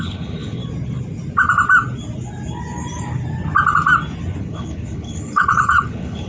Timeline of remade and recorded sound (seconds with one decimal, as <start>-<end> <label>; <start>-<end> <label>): 0.0-0.6 remade; 0.6-4.4 recorded; 4.4-6.3 remade